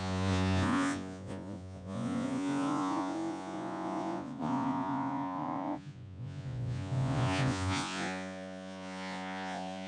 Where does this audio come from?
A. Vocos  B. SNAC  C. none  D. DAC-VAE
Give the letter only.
A